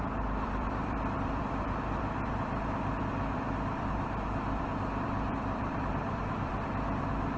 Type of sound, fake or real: fake